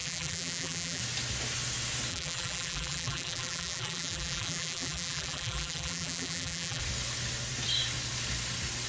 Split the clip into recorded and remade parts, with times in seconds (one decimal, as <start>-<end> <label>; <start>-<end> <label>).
0.0-1.0 remade; 1.0-2.1 recorded; 2.1-6.8 remade; 6.8-8.9 recorded